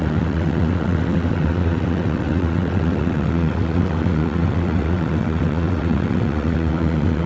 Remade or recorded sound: remade